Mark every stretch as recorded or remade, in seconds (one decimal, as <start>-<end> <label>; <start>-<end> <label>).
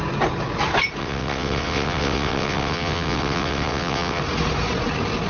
0.0-1.0 recorded; 1.0-4.2 remade; 4.2-5.3 recorded